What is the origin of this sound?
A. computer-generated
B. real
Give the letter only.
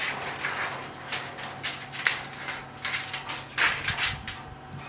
B